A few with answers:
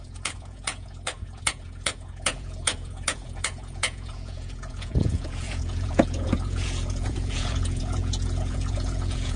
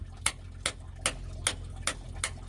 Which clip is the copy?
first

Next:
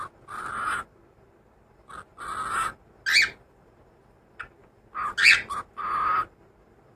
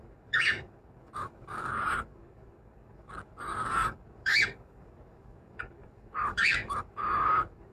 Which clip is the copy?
second